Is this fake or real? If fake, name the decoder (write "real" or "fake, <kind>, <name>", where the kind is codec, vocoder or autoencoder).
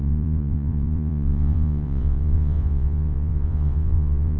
fake, vocoder, Vocos